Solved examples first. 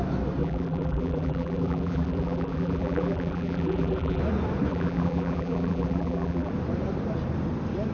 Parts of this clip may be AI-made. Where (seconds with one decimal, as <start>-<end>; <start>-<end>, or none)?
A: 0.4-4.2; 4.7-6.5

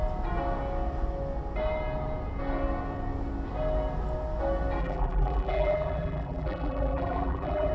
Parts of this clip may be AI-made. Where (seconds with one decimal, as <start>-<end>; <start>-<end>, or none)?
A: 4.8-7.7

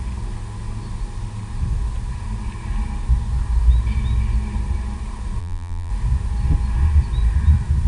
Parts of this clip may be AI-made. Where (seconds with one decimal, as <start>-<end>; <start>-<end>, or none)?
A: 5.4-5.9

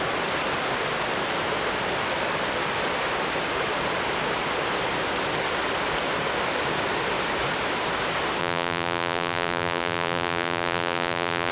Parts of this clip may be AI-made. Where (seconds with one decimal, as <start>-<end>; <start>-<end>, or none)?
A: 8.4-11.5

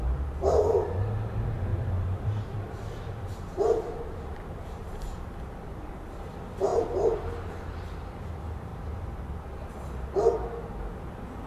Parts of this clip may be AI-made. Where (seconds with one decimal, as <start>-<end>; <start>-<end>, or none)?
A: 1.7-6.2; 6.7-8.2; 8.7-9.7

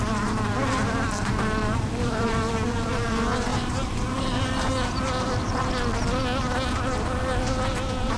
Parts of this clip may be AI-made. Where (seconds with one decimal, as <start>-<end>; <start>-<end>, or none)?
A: 1.6-2.5; 3.5-4.7

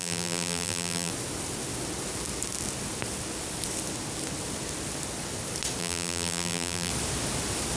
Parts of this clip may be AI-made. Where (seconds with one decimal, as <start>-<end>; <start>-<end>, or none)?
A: 0.0-1.1; 5.8-6.9